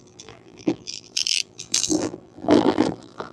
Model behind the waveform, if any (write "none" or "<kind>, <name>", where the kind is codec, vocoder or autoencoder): vocoder, BigVGAN v2